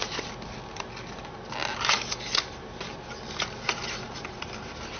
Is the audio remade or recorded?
recorded